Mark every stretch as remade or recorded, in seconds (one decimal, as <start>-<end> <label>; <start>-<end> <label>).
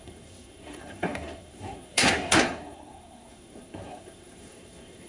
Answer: 0.0-5.1 remade